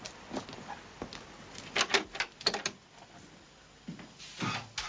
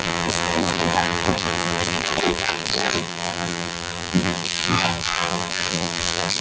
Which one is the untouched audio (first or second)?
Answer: first